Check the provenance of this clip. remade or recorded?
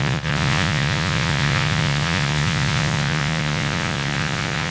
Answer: remade